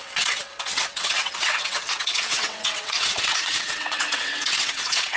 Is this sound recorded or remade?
remade